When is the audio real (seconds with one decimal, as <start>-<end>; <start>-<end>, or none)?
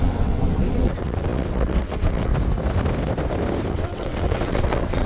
2.3-3.7